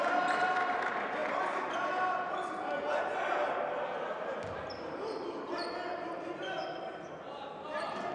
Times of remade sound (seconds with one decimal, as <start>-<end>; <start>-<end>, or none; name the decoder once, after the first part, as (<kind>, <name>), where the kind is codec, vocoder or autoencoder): none